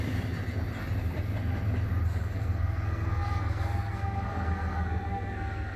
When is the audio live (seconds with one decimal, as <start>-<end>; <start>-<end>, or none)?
0.0-2.2